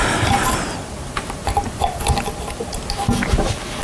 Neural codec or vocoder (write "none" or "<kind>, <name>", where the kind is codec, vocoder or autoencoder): none